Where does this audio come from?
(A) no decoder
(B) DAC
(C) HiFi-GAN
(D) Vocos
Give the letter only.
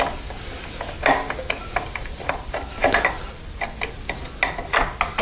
A